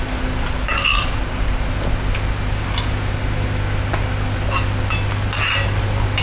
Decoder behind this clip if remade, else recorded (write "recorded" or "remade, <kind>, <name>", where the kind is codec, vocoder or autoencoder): recorded